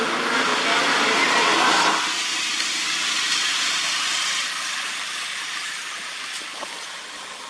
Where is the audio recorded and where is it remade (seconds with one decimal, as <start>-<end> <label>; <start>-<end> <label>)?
0.0-0.5 recorded; 0.5-1.0 remade; 1.0-2.5 recorded; 2.5-7.0 remade; 7.0-7.5 recorded